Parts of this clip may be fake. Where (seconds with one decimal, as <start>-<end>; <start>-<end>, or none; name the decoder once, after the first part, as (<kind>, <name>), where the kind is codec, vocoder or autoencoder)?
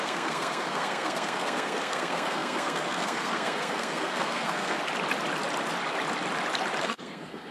0.0-4.8 (codec, SNAC); 6.8-7.5